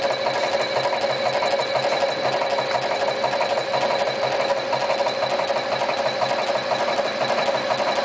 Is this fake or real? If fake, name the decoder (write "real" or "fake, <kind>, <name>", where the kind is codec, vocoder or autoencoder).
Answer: real